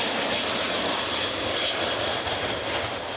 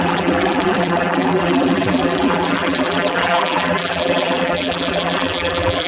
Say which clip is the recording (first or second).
first